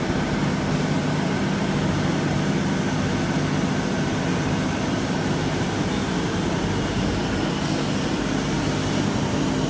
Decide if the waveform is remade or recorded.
recorded